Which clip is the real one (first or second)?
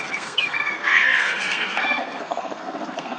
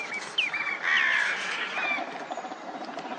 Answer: second